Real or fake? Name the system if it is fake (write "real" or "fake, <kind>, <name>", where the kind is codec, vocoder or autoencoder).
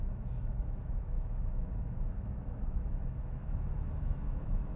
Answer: fake, autoencoder, DAC-VAE